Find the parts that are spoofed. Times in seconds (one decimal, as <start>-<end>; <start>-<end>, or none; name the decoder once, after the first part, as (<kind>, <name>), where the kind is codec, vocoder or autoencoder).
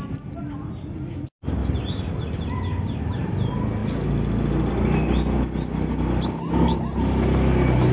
6.4-7.0 (codec, DAC)